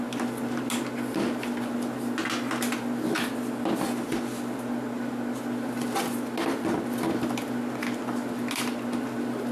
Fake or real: real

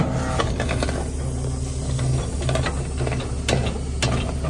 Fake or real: real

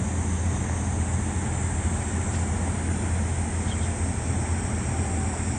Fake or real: real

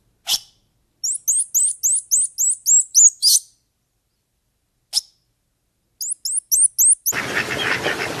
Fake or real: real